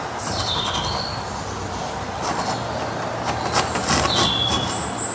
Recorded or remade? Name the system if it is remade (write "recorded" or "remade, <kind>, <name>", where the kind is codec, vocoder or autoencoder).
recorded